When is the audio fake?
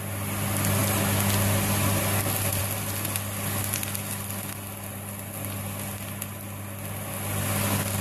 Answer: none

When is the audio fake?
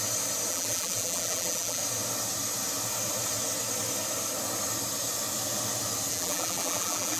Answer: 0.5-1.8 (vocoder, BigVGAN v2); 6.1-7.2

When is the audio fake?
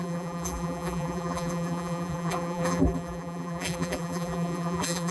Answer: 0.0-5.1 (vocoder, BigVGAN v2)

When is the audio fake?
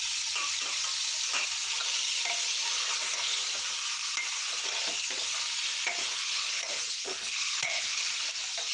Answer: 6.0-8.1 (codec, HILCodec)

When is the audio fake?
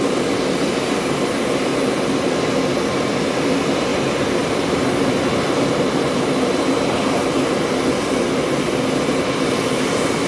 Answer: none